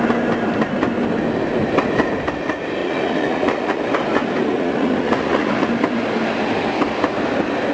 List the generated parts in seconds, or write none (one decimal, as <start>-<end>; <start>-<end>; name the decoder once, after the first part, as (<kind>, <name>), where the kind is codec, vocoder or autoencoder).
2.8-3.8 (vocoder, Vocos); 4.4-5.7